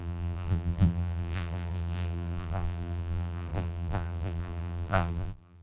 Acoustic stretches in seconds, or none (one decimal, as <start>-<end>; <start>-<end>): none

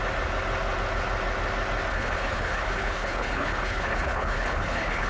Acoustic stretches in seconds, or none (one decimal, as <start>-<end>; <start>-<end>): 0.0-1.9